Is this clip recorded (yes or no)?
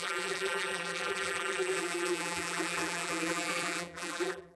no